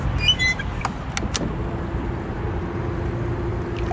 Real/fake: real